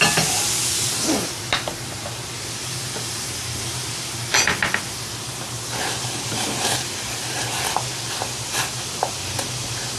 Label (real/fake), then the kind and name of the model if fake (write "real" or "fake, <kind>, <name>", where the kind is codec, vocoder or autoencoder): real